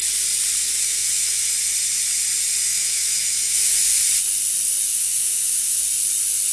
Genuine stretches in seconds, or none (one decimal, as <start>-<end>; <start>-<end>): 0.0-0.6; 1.5-2.7; 4.0-4.9; 5.8-6.5